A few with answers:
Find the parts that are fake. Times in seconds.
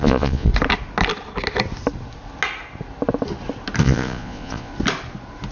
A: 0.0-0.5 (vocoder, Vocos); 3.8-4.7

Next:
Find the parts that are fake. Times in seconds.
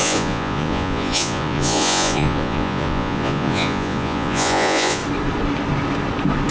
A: 0.0-5.0 (vocoder, Vocos)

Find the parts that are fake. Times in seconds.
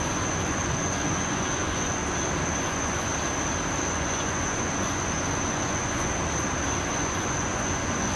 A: 0.0-2.0 (vocoder, Vocos); 2.6-3.1; 3.9-6.1; 6.9-8.2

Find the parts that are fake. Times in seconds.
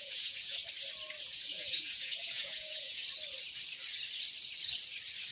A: 0.0-0.6 (vocoder, Vocos); 1.2-3.0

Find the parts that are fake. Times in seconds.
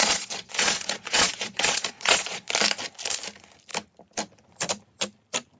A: 0.0-2.5 (vocoder, Vocos)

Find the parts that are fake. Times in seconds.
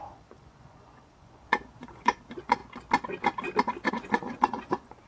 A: 0.0-2.6 (vocoder, Vocos); 3.9-5.1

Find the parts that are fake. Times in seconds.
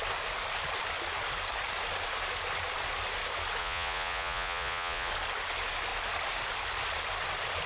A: 3.6-5.1 (vocoder, Vocos)